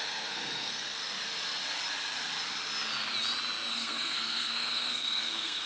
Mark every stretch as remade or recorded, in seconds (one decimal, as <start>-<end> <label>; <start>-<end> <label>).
0.0-1.0 remade; 1.0-3.7 recorded; 3.7-5.7 remade